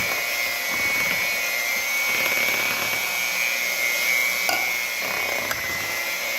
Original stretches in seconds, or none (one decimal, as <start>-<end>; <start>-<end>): 0.0-6.4